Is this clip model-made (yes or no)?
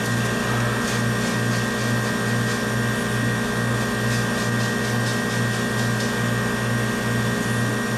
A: no